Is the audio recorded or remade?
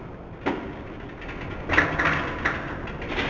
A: recorded